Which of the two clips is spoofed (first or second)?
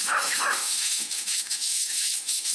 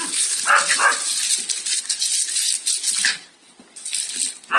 first